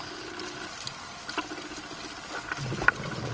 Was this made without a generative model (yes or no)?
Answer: yes